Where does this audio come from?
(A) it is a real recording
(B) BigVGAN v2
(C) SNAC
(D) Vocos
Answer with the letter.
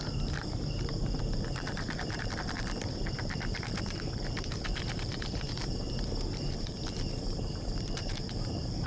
B